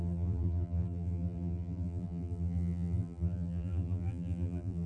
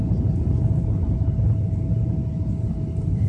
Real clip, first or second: second